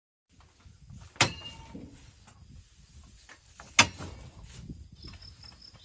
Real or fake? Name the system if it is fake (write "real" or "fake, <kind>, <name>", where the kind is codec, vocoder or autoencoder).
real